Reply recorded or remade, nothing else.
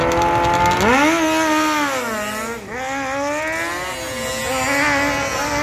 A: recorded